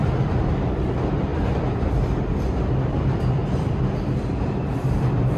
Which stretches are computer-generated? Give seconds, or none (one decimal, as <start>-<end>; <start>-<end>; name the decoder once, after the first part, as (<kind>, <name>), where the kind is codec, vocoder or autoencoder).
0.0-5.4 (vocoder, BigVGAN v2)